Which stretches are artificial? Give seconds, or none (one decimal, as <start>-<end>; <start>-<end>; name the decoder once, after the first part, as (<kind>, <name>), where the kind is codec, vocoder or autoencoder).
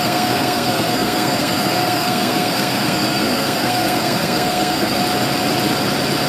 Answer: 0.0-5.0 (codec, SNAC)